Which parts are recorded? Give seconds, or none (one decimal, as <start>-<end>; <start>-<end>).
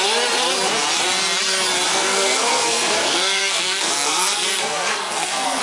0.0-1.9